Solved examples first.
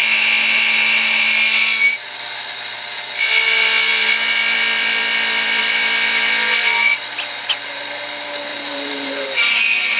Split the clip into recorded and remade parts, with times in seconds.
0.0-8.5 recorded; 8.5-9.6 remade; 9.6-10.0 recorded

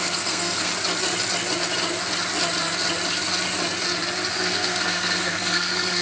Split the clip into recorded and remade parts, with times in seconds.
0.0-0.7 remade; 0.7-4.3 recorded; 4.3-6.0 remade

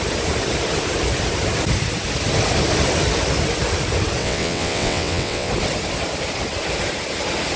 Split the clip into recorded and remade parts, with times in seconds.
0.0-4.2 recorded; 4.2-5.5 remade; 5.5-7.6 recorded

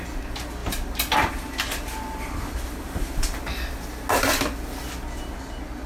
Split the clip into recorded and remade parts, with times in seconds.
0.0-0.6 recorded; 0.6-3.4 remade; 3.4-5.9 recorded

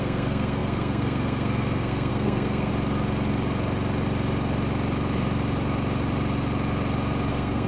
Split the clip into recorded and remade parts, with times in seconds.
0.0-2.7 remade; 2.7-7.3 recorded; 7.3-7.7 remade